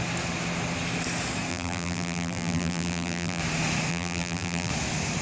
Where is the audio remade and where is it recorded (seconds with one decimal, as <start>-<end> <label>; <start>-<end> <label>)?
0.0-1.5 recorded; 1.5-3.4 remade; 3.4-3.9 recorded; 3.9-4.7 remade; 4.7-5.2 recorded